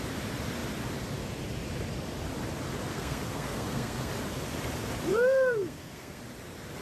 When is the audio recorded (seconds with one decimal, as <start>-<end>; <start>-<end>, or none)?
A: 0.0-2.9; 4.1-5.1; 6.2-6.8